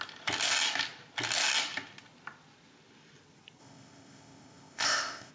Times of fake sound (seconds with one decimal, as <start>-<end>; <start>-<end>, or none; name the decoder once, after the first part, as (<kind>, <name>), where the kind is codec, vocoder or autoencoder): 3.6-5.3 (codec, ZipCodec)